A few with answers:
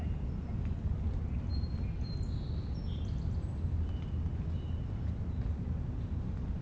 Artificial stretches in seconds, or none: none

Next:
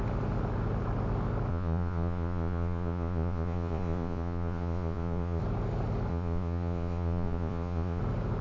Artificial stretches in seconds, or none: 1.5-5.4 (vocoder, Vocos); 6.1-8.0

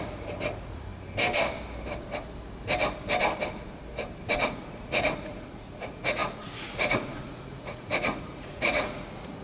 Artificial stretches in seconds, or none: 0.0-0.9 (vocoder, Vocos); 4.3-9.4

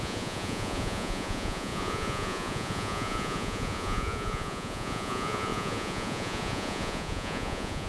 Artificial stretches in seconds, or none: 0.0-7.9 (vocoder, Vocos)

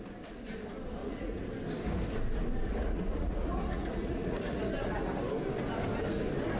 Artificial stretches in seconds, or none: 1.0-1.5 (vocoder, Vocos); 2.7-5.2

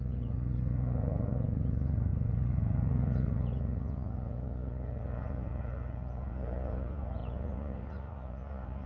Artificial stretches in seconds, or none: 0.0-8.9 (vocoder, Vocos)